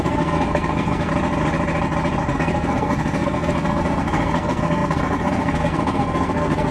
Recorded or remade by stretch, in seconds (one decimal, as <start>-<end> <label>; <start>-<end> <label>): 0.0-1.1 remade; 1.1-2.3 recorded; 2.3-6.7 remade